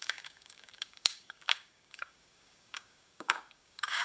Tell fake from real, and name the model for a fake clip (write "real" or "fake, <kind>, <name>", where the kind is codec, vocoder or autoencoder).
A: fake, codec, DAC